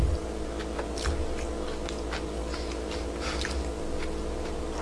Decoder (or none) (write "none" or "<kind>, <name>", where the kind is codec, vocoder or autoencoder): none